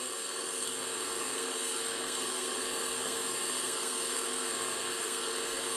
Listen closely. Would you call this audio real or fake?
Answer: fake